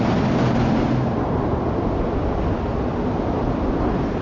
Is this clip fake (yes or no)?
no